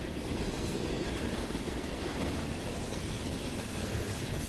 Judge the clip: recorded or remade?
remade